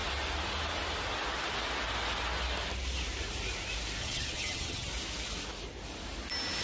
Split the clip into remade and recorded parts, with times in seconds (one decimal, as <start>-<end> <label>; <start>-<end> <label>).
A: 0.0-4.0 recorded; 4.0-4.9 remade; 4.9-6.6 recorded